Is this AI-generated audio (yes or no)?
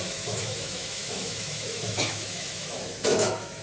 yes